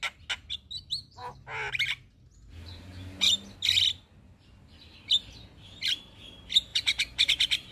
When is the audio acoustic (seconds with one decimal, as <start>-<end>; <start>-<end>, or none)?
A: 0.0-6.7